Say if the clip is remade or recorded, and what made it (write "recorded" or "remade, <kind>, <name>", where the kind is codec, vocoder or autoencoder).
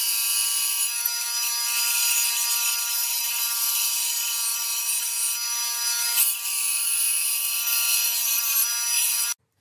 recorded